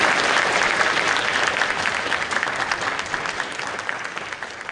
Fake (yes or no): no